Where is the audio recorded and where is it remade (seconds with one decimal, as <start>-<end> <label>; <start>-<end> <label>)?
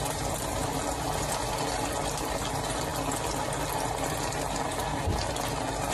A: 0.0-5.9 recorded